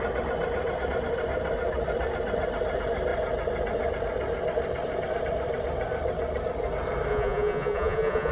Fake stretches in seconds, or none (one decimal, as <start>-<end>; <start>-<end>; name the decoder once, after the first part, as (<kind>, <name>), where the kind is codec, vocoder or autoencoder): 7.1-8.3 (vocoder, Vocos)